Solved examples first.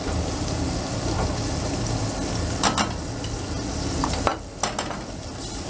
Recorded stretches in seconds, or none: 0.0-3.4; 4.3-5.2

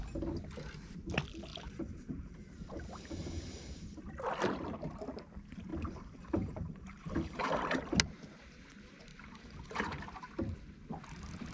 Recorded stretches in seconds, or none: 0.0-1.5; 4.0-5.7; 8.0-9.1; 10.0-11.5

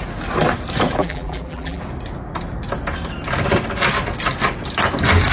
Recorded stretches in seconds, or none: 0.0-1.0; 1.8-5.3